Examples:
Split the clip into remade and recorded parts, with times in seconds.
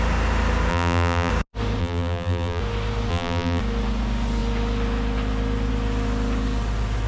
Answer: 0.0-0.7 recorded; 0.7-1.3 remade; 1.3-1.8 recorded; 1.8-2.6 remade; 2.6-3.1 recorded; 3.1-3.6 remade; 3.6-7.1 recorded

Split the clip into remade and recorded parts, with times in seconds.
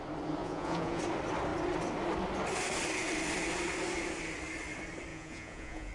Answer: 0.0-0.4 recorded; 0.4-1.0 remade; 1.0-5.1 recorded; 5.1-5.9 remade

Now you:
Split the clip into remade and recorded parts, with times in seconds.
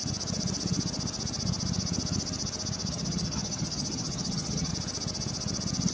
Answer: 0.0-2.9 recorded; 2.9-4.7 remade; 4.7-5.9 recorded